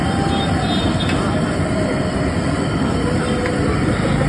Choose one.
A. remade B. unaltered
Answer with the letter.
B